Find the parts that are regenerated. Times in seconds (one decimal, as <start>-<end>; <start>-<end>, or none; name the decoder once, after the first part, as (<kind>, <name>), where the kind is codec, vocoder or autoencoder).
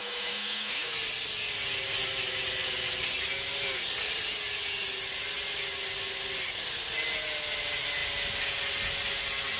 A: 0.0-0.9 (autoencoder, DAC-VAE)